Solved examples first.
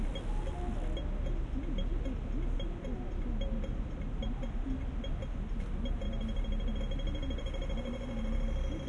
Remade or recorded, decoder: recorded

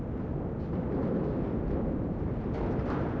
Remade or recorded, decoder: recorded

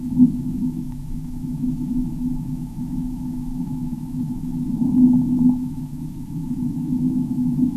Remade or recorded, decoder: remade, autoencoder, DAC-VAE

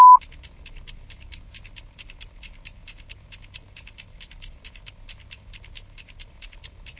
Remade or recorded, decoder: recorded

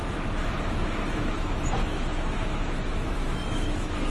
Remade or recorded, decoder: remade, autoencoder, DAC-VAE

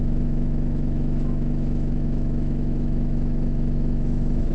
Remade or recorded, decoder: remade, autoencoder, DAC-VAE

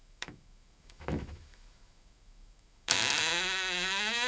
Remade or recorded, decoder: remade, autoencoder, DAC-VAE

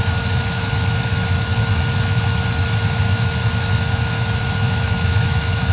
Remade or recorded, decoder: remade, autoencoder, DAC-VAE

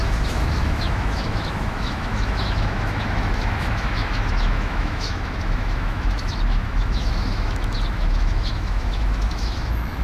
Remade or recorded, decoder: remade, autoencoder, DAC-VAE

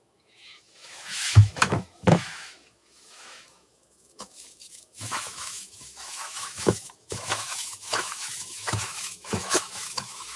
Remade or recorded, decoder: remade, autoencoder, DAC-VAE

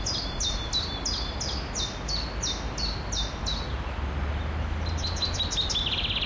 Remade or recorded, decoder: recorded